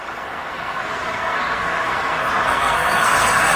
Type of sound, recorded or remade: remade